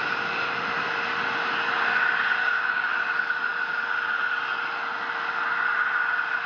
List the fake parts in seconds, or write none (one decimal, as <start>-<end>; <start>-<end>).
2.4-2.9